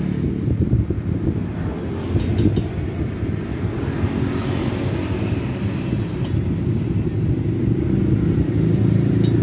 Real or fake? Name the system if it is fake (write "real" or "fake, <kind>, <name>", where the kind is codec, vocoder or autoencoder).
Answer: real